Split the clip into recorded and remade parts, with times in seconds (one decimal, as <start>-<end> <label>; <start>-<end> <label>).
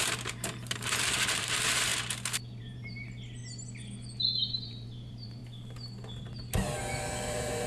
0.0-1.9 remade; 1.9-2.6 recorded; 2.6-3.4 remade; 3.4-4.5 recorded; 4.5-5.4 remade; 5.4-6.8 recorded; 6.8-7.7 remade